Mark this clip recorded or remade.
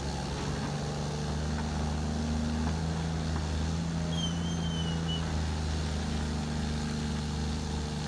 recorded